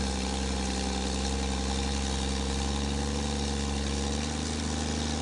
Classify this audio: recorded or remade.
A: recorded